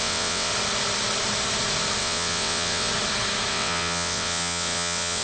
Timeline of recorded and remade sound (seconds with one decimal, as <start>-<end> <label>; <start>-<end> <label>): 0.0-0.5 remade; 0.5-2.0 recorded; 2.0-2.9 remade; 2.9-3.5 recorded; 3.5-5.2 remade